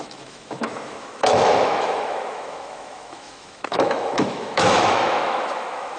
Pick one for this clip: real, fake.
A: fake